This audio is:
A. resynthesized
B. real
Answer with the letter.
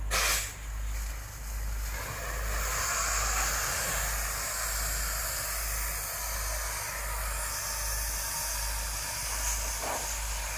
B